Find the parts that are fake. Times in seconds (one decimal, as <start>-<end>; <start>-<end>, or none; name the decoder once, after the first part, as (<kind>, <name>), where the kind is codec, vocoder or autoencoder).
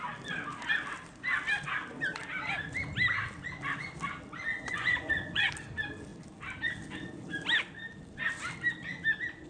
4.5-5.5 (vocoder, Vocos)